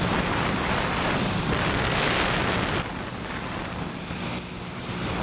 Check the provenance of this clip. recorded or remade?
recorded